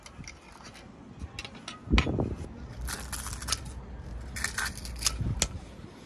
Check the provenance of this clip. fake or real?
real